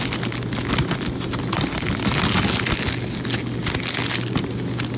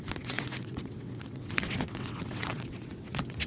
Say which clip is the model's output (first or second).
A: second